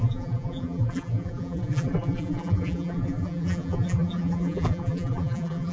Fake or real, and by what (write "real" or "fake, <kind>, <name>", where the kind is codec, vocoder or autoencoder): fake, vocoder, BigVGAN v2